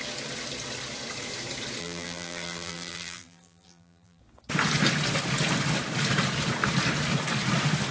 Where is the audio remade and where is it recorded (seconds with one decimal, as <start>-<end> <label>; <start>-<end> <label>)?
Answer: 0.0-1.8 recorded; 1.8-4.2 remade; 4.2-7.9 recorded